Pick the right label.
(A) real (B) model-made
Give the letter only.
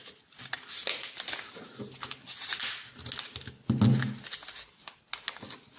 A